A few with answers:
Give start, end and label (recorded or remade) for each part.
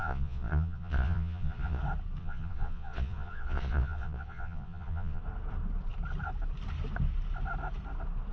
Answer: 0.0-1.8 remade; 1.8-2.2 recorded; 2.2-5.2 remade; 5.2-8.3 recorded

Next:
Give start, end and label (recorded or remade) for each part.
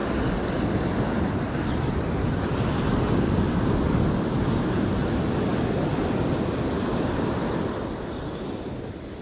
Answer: 0.0-9.2 recorded